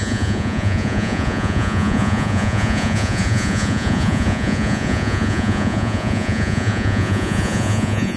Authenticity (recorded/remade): remade